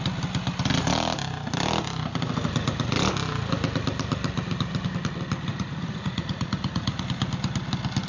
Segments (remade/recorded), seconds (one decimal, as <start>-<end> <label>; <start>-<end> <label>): 0.0-5.5 recorded; 5.5-7.0 remade; 7.0-8.1 recorded